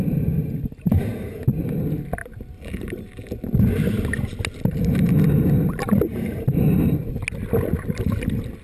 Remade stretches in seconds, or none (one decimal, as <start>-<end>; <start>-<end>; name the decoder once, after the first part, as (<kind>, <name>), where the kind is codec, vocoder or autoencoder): 2.2-3.0 (vocoder, BigVGAN v2); 6.1-7.1